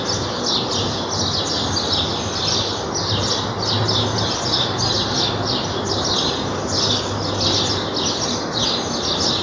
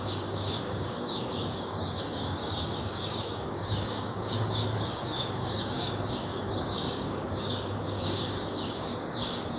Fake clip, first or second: second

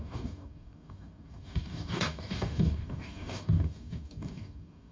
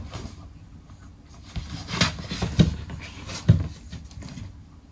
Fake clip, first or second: first